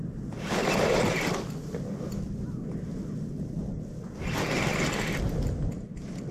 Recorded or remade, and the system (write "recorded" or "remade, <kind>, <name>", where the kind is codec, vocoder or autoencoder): recorded